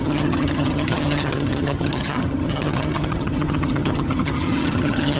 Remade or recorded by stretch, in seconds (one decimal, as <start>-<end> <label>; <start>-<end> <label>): 0.0-5.2 remade